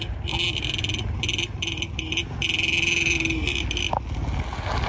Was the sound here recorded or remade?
recorded